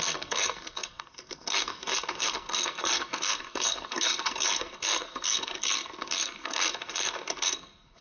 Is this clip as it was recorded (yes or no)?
no